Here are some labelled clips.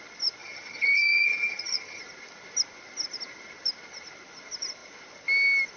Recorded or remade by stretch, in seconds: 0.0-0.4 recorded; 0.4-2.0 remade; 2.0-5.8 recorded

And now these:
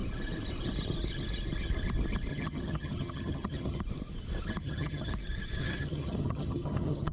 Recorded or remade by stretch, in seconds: 0.0-2.3 recorded; 2.3-3.8 remade; 3.8-4.6 recorded; 4.6-5.1 remade; 5.1-5.6 recorded; 5.6-7.1 remade

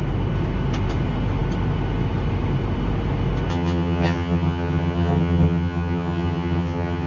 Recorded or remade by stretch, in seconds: 0.0-3.5 recorded; 3.5-7.1 remade

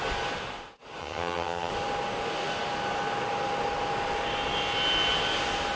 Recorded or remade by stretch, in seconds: 0.0-1.0 recorded; 1.0-1.7 remade; 1.7-5.8 recorded

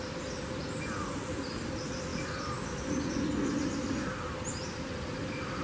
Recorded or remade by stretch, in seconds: 0.0-5.6 recorded